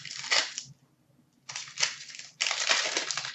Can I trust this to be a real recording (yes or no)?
yes